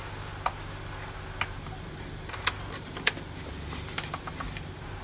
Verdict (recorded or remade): recorded